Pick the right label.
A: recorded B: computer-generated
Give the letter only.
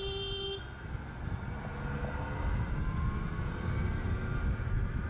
A